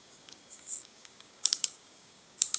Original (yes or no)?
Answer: no